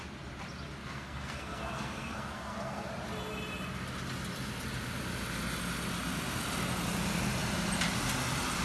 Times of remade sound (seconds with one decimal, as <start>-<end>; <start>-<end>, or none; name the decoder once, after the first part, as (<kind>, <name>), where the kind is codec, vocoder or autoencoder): 0.8-2.9 (codec, SNAC)